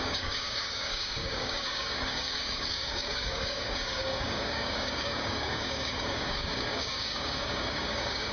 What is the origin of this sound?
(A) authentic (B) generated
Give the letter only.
B